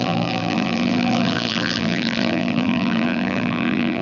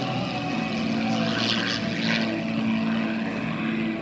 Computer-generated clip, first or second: first